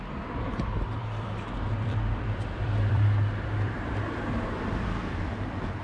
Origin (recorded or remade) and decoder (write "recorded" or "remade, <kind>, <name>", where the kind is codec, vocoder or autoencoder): remade, vocoder, BigVGAN v2